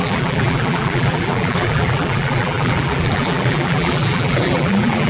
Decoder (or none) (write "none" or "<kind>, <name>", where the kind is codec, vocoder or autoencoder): vocoder, BigVGAN v2